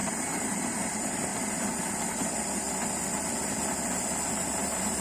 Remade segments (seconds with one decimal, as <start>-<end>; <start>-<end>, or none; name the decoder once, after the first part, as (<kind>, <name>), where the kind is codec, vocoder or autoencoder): 0.0-1.3 (vocoder, BigVGAN v2); 4.3-5.0